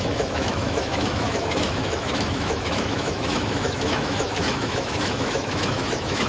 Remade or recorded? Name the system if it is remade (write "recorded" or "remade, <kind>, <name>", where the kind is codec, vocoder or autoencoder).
remade, autoencoder, DAC-VAE